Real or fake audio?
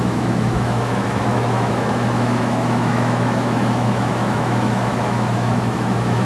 fake